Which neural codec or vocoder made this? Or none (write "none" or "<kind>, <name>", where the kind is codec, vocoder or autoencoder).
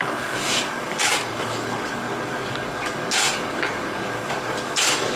codec, DAC